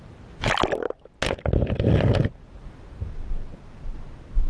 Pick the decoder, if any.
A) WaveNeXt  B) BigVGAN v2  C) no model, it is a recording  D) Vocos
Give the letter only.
C